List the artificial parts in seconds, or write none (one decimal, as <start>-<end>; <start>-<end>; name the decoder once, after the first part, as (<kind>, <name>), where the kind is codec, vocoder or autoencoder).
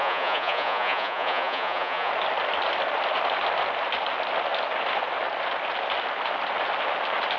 0.0-2.1 (vocoder, Vocos)